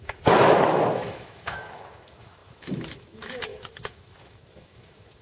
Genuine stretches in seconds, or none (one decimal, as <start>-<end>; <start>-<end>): none